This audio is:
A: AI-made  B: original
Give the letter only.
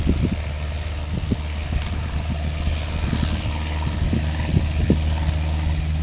B